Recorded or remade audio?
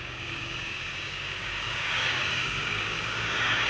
remade